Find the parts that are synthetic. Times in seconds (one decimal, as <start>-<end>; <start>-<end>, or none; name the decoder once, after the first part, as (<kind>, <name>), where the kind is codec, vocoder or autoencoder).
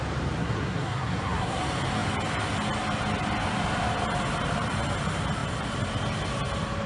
0.4-1.6 (codec, SNAC)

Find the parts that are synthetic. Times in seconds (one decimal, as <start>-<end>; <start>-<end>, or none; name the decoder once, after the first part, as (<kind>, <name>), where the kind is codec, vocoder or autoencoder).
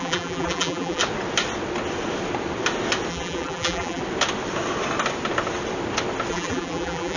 0.0-1.0 (vocoder, BigVGAN v2); 3.1-4.0; 6.3-7.2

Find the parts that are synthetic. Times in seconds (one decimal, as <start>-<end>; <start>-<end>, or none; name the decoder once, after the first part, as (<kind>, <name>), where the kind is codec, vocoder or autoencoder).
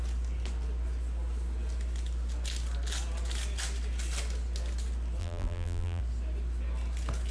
5.2-6.0 (vocoder, BigVGAN v2)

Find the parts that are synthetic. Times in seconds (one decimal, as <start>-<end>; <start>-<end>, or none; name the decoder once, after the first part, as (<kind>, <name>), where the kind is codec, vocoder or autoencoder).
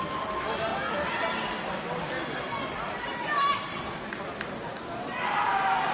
none